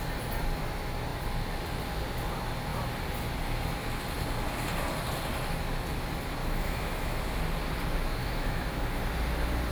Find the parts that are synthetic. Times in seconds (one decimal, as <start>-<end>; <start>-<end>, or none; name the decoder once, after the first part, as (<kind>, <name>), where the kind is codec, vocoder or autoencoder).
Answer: 6.4-7.2 (autoencoder, DAC-VAE); 8.2-9.0